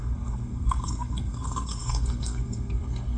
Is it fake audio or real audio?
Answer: fake